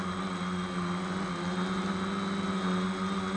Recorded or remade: recorded